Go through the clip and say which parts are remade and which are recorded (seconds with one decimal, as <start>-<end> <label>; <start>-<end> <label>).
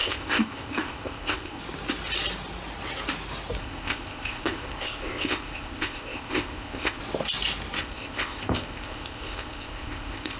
0.0-1.6 remade; 1.6-3.6 recorded; 3.6-7.0 remade; 7.0-7.8 recorded; 7.8-10.4 remade